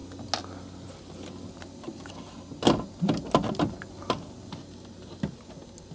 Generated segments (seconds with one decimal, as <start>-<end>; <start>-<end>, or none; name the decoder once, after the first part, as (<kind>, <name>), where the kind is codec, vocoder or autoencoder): none